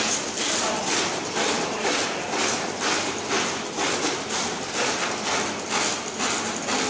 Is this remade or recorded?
recorded